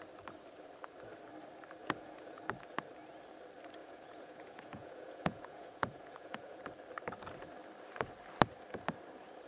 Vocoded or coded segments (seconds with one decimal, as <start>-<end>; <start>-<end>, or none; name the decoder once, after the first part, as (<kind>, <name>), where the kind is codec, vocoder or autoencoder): 1.8-2.4 (vocoder, Vocos); 3.8-6.6